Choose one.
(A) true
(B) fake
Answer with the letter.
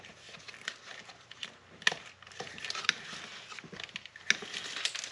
A